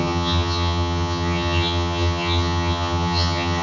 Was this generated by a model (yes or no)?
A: yes